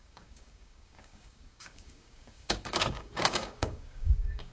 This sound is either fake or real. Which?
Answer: fake